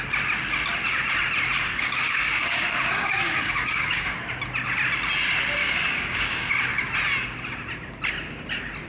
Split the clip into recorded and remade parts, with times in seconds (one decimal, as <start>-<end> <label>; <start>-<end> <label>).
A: 0.0-1.7 recorded; 1.7-4.3 remade; 4.3-5.6 recorded; 5.6-6.5 remade; 6.5-8.9 recorded